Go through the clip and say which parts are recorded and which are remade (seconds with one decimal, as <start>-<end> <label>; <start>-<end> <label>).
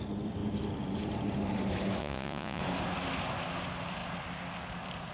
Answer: 0.0-2.0 recorded; 2.0-2.6 remade; 2.6-5.1 recorded